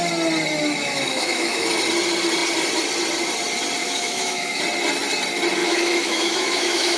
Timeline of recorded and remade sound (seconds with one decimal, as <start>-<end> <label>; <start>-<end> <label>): 0.0-0.6 recorded; 0.6-1.7 remade; 1.7-3.8 recorded; 3.8-4.6 remade; 4.6-5.6 recorded; 5.6-7.0 remade